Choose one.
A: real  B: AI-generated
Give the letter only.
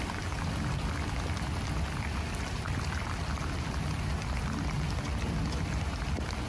A